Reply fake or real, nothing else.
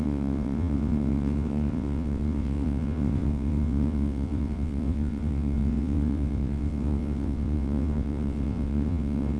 fake